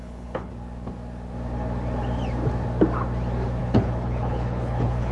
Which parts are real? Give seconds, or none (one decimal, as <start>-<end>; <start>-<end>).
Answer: 0.5-3.6